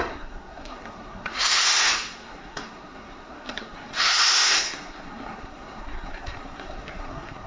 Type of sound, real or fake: fake